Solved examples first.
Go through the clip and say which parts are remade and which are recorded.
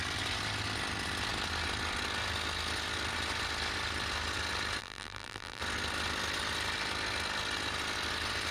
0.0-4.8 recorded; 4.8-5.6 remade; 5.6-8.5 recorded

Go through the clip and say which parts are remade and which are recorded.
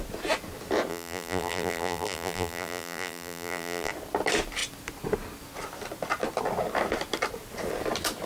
0.0-0.9 recorded; 0.9-3.9 remade; 3.9-8.3 recorded